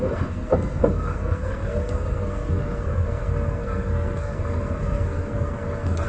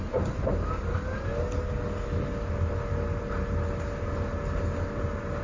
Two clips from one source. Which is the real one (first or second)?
second